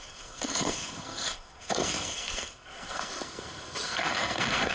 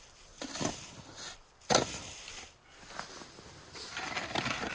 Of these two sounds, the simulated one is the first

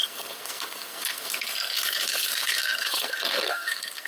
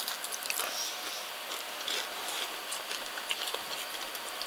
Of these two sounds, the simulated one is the first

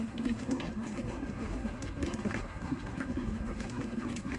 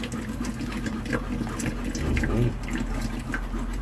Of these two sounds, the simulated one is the first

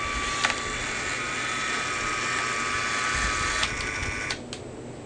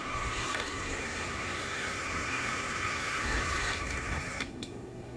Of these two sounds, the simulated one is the second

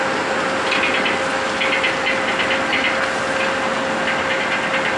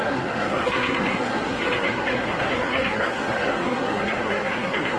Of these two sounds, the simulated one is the second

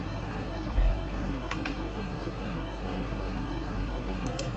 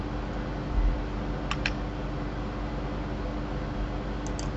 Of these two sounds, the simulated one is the first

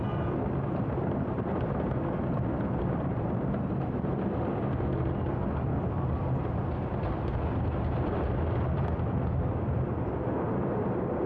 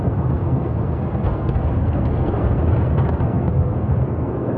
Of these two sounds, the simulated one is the second